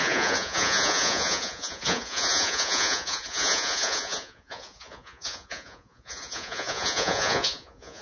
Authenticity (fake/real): fake